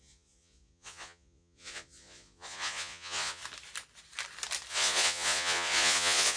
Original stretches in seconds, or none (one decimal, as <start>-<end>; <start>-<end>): 3.4-4.7

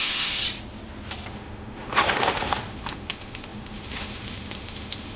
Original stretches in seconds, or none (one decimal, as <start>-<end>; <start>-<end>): 0.4-1.3

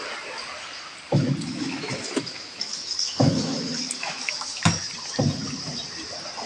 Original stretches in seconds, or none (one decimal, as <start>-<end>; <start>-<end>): 0.0-1.1; 4.9-6.5

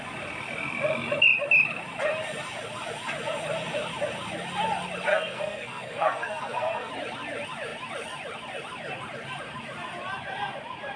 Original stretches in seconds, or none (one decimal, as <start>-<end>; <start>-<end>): 0.0-5.1; 6.9-11.0

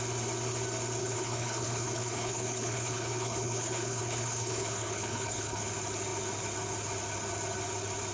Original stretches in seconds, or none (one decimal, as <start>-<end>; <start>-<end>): 0.0-1.0; 5.6-8.1